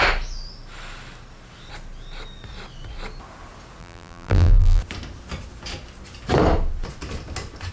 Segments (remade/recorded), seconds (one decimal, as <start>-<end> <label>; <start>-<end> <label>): 0.0-3.8 recorded; 3.8-4.8 remade; 4.8-7.7 recorded